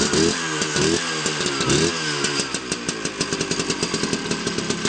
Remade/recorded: recorded